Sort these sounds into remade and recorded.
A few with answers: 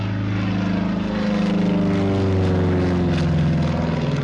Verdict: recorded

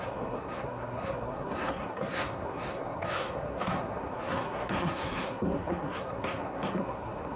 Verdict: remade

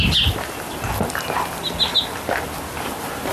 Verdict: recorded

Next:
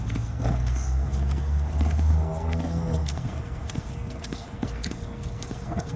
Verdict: remade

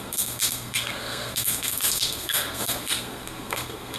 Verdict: remade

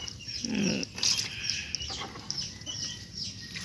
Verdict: recorded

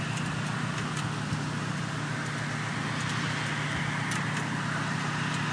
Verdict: recorded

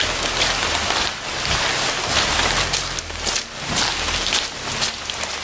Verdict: recorded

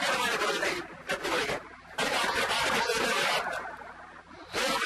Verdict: recorded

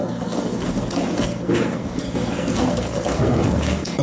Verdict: remade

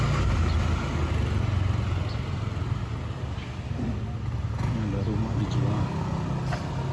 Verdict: recorded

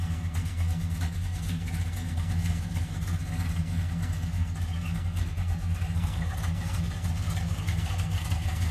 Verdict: remade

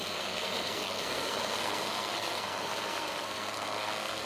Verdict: remade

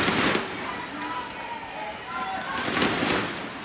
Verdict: recorded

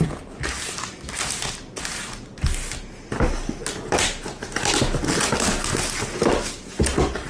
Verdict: recorded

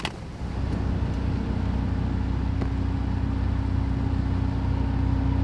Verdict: recorded